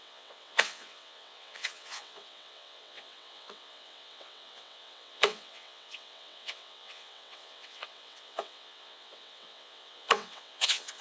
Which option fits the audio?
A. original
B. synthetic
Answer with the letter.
B